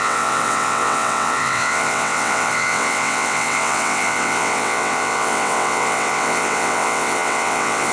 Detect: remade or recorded remade